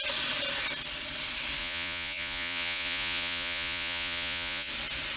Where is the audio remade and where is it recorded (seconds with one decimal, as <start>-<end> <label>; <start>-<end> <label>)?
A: 0.0-1.6 recorded; 1.6-4.7 remade; 4.7-5.2 recorded